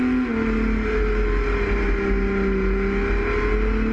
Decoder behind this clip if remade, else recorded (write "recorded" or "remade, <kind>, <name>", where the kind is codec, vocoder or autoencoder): recorded